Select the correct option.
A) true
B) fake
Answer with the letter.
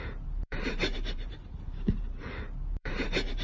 B